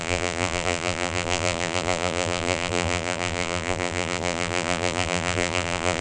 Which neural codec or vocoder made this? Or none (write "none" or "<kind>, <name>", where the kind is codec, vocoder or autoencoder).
vocoder, BigVGAN v2